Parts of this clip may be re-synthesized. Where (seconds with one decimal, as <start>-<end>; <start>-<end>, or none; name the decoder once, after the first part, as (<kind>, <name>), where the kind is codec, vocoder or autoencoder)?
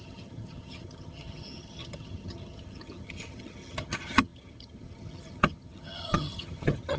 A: 0.0-7.0 (vocoder, HiFi-GAN)